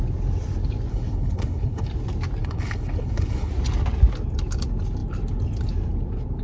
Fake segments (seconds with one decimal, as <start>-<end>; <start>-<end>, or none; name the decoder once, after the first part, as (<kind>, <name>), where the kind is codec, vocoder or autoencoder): 0.9-1.9 (codec, HILCodec); 2.4-3.5